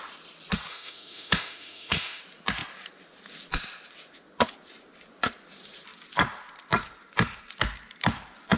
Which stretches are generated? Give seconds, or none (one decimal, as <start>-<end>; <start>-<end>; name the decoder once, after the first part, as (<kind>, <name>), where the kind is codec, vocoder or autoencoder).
0.7-2.2 (autoencoder, DAC-VAE)